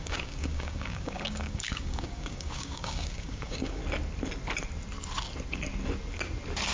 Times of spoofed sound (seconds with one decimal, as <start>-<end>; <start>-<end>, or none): 0.0-3.8